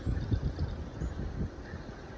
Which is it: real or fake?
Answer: real